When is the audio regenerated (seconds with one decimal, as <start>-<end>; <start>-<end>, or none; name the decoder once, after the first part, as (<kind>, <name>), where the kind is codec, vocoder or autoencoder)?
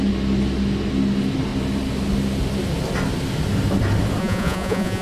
4.2-5.0 (vocoder, Vocos)